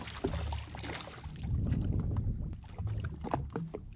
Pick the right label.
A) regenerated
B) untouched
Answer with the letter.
B